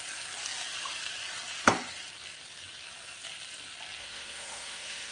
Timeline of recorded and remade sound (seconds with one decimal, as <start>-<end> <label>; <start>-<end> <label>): 0.0-4.0 recorded; 4.0-5.1 remade